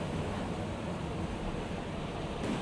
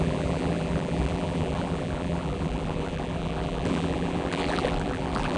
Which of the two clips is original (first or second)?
first